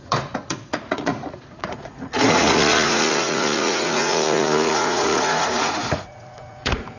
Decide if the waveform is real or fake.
fake